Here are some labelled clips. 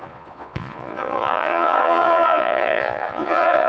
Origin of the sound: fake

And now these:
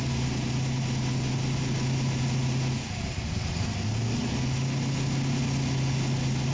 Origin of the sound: real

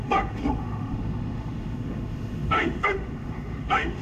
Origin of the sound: fake